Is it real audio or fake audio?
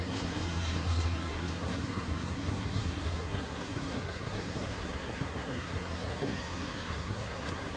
fake